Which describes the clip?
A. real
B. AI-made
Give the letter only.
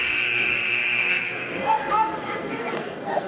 B